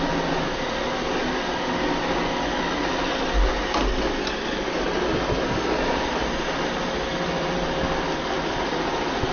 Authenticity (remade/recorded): recorded